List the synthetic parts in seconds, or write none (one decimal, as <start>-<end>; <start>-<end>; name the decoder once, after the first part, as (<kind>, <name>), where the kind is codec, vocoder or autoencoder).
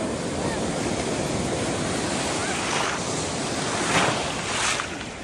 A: none